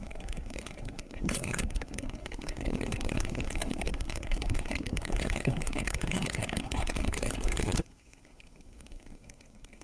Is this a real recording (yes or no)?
no